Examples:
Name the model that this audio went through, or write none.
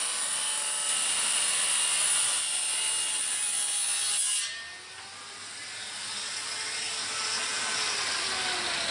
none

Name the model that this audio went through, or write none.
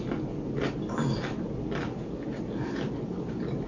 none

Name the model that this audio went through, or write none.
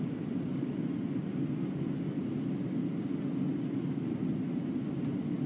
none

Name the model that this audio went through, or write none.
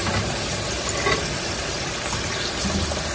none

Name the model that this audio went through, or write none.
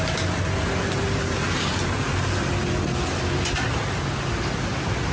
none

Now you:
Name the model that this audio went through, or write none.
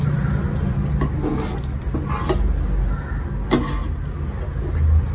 none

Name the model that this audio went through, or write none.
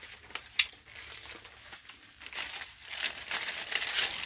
none